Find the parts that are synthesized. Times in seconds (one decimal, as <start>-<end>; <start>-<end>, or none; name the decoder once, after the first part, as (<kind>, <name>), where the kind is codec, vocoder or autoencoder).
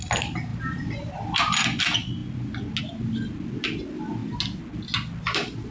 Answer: 0.5-1.8 (vocoder, BigVGAN v2)